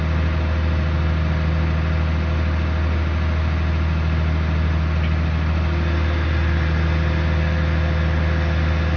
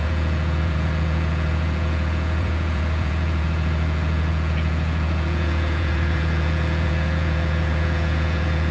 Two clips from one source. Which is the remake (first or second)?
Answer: second